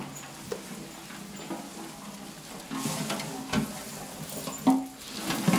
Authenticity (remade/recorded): recorded